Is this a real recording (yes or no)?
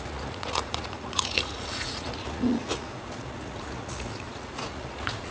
no